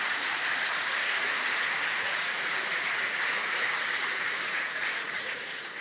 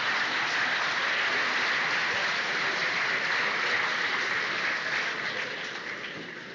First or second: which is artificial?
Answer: first